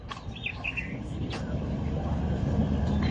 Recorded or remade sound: recorded